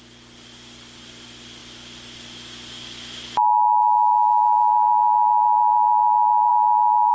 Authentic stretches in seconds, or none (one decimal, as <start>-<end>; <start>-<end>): 0.0-7.1

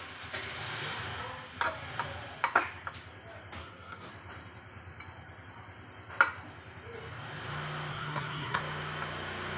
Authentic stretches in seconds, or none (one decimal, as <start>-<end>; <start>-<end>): 0.0-3.6; 4.1-7.9; 8.6-9.6